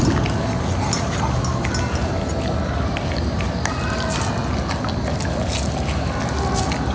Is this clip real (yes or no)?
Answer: yes